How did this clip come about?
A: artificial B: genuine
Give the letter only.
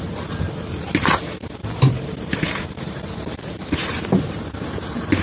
A